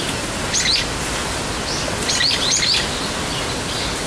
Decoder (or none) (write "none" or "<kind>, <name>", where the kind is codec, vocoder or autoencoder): none